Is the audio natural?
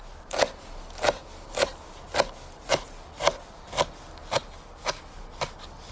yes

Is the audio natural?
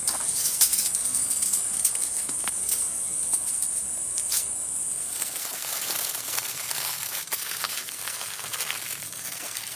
no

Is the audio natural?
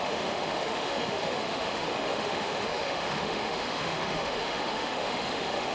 no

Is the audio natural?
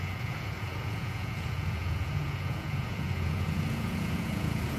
no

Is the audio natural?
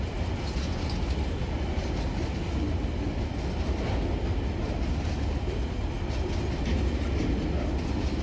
yes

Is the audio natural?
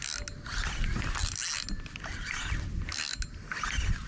yes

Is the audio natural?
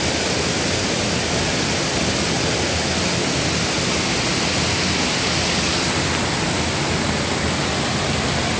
yes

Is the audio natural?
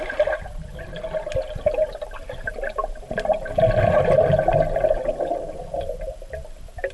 yes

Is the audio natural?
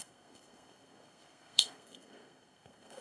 no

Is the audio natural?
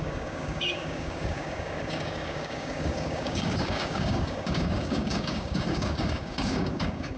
no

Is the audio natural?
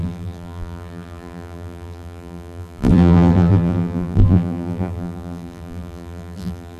no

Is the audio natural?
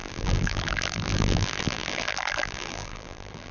no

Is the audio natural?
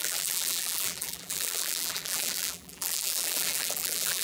no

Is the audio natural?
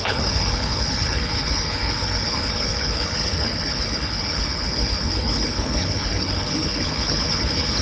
no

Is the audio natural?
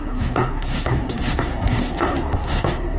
no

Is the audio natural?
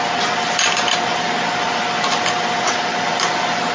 yes